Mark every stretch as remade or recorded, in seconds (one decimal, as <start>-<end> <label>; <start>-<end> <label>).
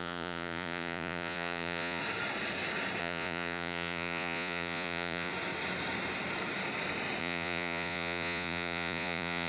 0.0-2.0 remade; 2.0-3.0 recorded; 3.0-5.3 remade; 5.3-7.2 recorded; 7.2-9.5 remade